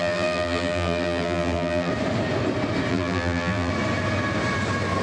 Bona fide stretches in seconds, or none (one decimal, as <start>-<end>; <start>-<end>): 1.9-2.9; 3.7-5.0

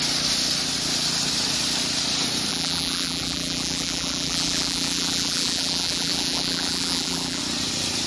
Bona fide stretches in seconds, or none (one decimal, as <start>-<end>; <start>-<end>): 0.0-2.5; 7.4-8.1

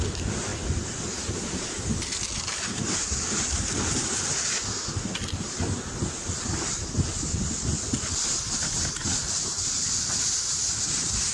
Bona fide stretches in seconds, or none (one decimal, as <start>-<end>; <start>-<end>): 0.0-11.3

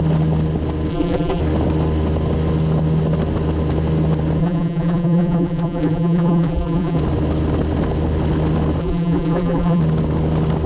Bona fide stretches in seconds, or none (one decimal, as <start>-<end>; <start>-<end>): 0.0-0.9; 1.4-4.4; 7.0-8.8; 9.8-10.7

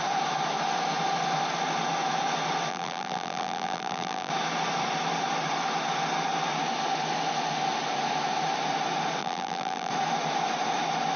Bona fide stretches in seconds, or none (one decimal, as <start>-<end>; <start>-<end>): 0.0-2.7; 4.3-9.2; 9.9-11.2

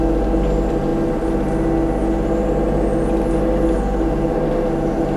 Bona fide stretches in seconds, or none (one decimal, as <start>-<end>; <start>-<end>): 0.0-5.2

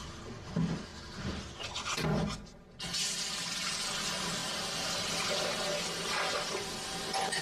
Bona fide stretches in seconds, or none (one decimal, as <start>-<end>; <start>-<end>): 0.0-7.4